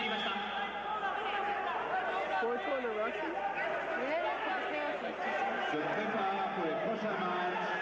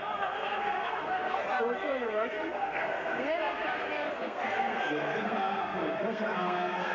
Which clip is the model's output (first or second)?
second